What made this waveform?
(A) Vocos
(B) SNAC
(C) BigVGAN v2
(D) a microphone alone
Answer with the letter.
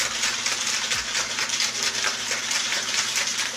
C